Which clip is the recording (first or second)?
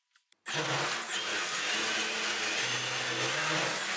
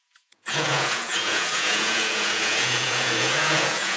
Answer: first